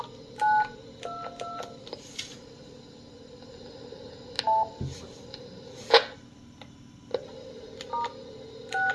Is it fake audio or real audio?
real